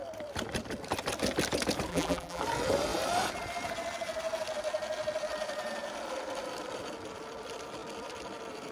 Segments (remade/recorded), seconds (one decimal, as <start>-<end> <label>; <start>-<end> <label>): 0.0-1.9 recorded; 1.9-2.4 remade; 2.4-8.7 recorded